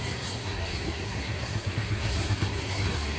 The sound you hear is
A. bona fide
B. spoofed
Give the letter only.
B